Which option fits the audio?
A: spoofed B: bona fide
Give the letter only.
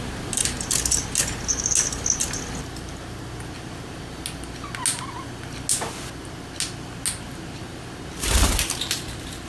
B